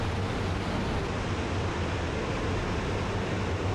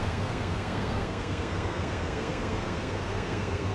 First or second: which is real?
first